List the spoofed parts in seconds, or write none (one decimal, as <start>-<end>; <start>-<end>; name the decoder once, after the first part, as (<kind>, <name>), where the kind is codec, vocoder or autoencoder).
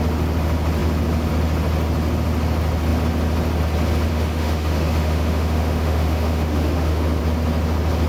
4.1-7.2 (autoencoder, DAC-VAE)